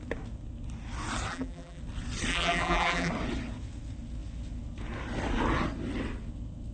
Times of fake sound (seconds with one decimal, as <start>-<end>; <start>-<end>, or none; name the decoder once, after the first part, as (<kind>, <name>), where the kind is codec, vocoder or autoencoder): 1.3-1.8 (vocoder, BigVGAN v2); 2.3-3.1